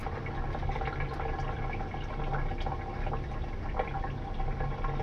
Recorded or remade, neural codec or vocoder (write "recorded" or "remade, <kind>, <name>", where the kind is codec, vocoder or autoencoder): recorded